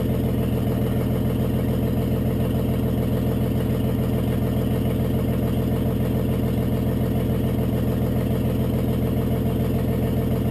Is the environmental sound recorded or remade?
recorded